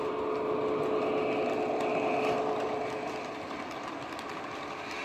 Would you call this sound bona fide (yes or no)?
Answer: yes